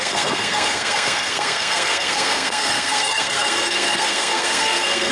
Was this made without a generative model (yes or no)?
no